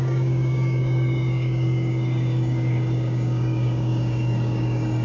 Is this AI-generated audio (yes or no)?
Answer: yes